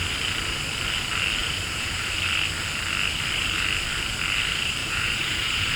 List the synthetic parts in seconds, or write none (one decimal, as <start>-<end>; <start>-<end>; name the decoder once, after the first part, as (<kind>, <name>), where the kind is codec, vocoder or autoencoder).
1.4-2.1 (vocoder, Vocos); 4.8-5.8

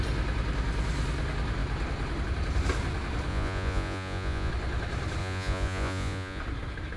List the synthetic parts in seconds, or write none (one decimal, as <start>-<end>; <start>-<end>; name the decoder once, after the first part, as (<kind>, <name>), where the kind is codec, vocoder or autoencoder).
3.3-4.5 (vocoder, Vocos); 5.2-6.4